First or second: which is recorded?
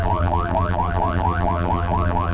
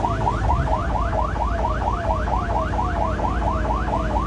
second